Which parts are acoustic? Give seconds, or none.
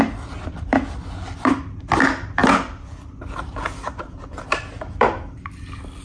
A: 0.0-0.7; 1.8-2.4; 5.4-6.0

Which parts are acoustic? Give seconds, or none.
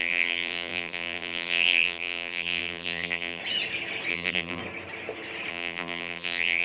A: 3.4-4.1; 4.6-5.5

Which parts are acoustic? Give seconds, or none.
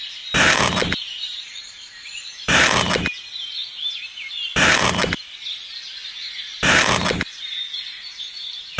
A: 0.0-1.0; 2.6-8.8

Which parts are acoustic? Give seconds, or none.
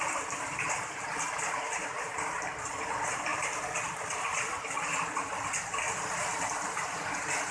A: 0.0-7.5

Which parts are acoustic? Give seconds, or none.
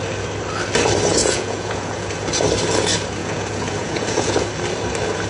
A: 0.0-1.2; 2.1-3.2; 4.5-5.3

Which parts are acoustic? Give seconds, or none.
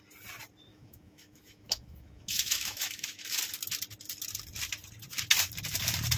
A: 0.0-0.7; 3.4-6.2